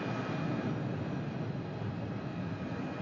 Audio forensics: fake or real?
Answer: real